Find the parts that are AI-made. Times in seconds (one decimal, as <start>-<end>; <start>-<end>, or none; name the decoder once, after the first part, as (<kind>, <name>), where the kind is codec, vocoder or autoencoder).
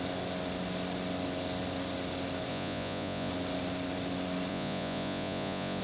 2.5-3.3 (vocoder, Vocos); 4.5-5.8